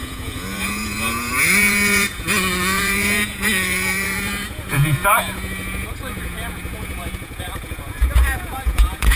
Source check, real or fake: fake